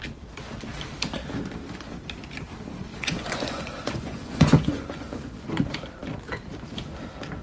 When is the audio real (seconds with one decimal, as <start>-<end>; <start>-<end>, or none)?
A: 0.0-2.9; 5.5-7.4